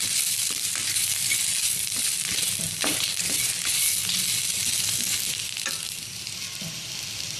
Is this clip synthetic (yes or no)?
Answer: yes